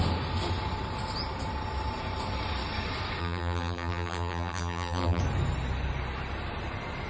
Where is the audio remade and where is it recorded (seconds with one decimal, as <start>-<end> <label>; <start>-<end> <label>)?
0.0-3.2 recorded; 3.2-5.2 remade; 5.2-7.1 recorded